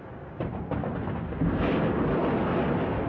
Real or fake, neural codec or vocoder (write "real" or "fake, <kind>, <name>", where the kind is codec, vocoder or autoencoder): real